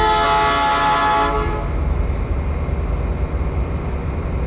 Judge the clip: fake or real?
real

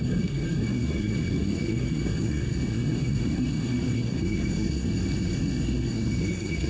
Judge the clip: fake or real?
fake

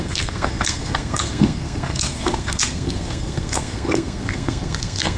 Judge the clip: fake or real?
fake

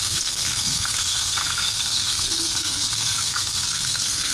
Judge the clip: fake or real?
fake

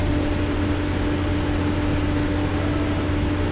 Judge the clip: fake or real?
real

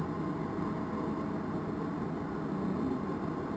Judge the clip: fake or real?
real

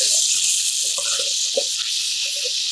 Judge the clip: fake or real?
real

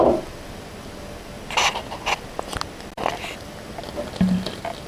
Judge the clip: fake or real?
real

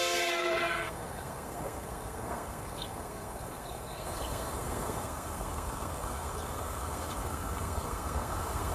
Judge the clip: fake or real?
fake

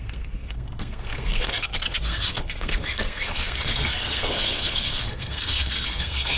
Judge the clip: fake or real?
fake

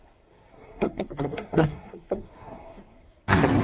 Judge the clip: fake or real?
fake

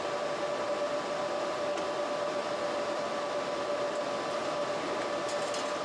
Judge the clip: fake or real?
real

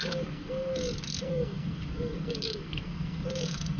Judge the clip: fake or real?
fake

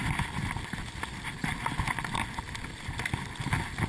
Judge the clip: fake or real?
real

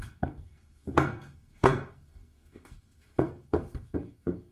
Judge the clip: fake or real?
fake